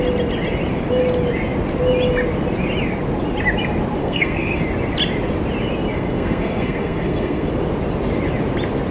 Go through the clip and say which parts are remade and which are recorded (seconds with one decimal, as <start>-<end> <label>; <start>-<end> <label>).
0.0-4.0 recorded; 4.0-4.6 remade; 4.6-5.9 recorded; 5.9-7.5 remade; 7.5-8.9 recorded